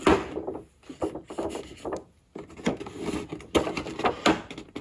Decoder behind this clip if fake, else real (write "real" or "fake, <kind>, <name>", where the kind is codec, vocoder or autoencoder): real